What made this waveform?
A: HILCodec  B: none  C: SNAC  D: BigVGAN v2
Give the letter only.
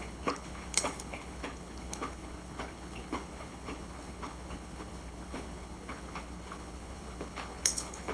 A